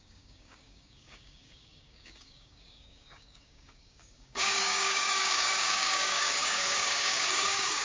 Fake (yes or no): yes